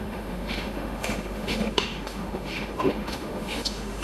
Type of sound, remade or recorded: remade